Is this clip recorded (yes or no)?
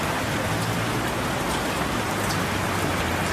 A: yes